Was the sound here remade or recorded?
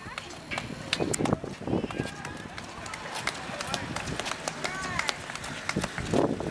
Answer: recorded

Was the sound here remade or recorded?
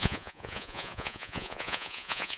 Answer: remade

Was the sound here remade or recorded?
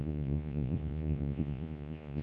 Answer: remade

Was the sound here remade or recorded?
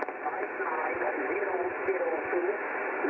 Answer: recorded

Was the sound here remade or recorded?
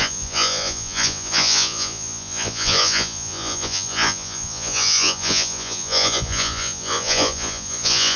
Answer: remade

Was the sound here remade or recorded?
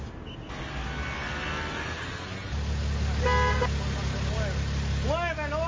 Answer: recorded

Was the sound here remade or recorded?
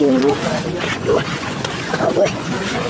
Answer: remade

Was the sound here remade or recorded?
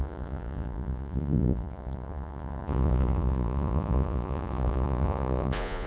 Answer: remade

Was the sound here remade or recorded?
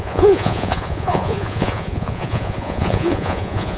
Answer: remade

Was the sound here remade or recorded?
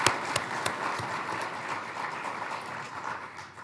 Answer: recorded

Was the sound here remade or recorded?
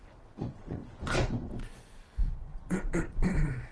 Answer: remade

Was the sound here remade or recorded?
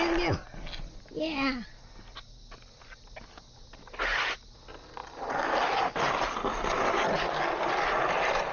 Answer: recorded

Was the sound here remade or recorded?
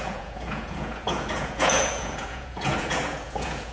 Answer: remade